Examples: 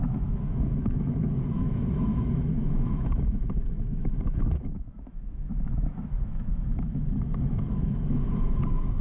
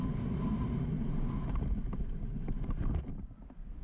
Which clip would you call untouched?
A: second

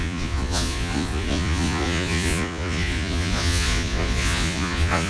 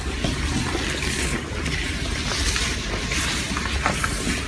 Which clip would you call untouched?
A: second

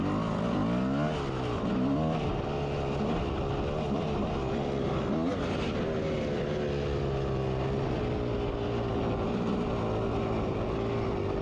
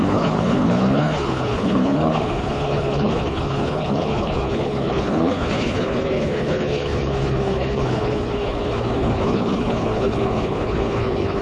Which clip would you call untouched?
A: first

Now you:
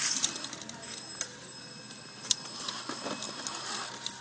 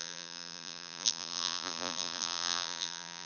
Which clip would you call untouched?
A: first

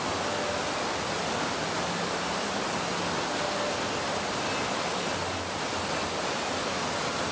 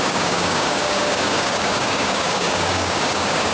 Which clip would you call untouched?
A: first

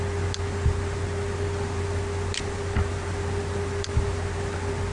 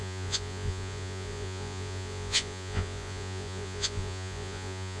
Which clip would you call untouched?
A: first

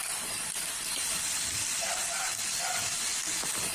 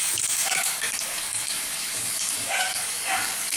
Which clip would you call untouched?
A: first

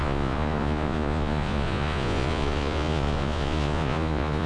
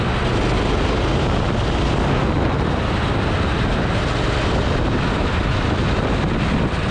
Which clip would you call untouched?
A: second